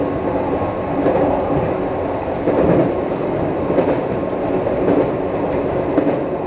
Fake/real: real